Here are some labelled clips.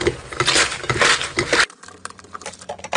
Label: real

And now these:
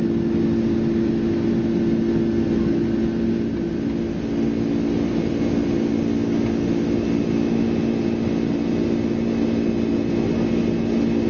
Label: real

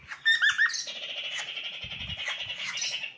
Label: real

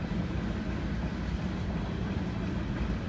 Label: real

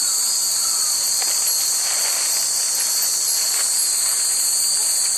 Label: real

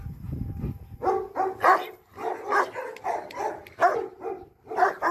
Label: real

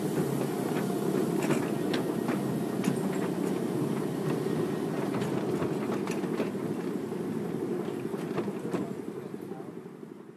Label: real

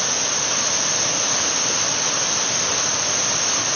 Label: real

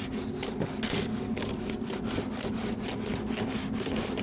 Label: real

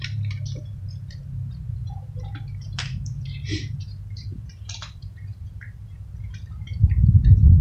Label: fake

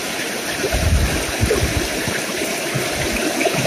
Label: real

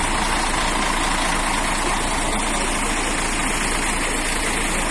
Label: real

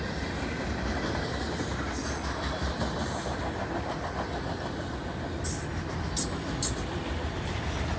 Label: real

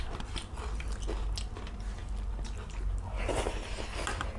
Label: real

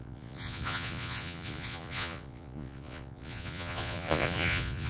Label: fake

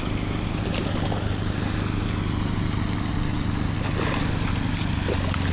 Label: real